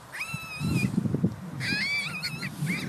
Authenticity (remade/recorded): recorded